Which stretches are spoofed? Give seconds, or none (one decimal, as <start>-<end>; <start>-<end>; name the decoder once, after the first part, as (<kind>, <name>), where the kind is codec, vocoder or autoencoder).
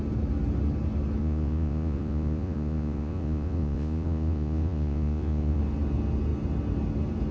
1.2-5.6 (vocoder, Vocos)